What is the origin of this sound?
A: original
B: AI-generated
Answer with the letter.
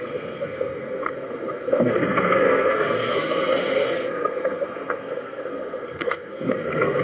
B